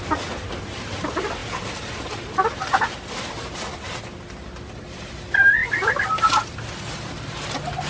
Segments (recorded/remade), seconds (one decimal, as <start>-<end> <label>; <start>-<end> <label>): 0.0-7.9 recorded